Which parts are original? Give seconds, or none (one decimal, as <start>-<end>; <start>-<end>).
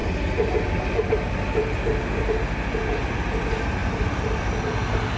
0.0-3.8; 4.7-5.2